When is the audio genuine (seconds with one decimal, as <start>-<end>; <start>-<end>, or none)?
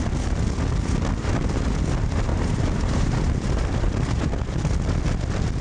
0.0-2.3; 4.3-5.6